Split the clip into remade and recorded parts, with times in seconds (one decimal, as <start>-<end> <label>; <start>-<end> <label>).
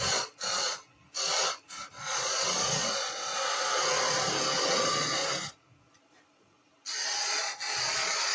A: 0.0-0.8 remade; 0.8-1.9 recorded; 1.9-3.8 remade; 3.8-4.6 recorded; 4.6-5.2 remade; 5.2-5.8 recorded; 5.8-8.3 remade